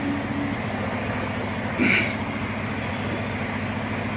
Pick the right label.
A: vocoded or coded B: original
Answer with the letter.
B